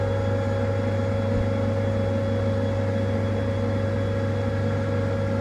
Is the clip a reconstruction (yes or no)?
no